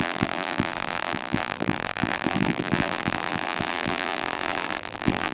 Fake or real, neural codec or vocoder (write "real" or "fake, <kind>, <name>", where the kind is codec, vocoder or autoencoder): fake, vocoder, BigVGAN v2